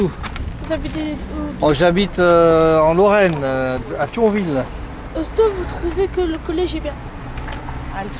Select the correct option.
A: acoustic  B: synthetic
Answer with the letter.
A